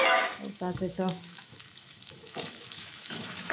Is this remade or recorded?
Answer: remade